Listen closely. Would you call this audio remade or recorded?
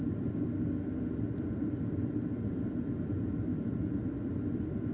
remade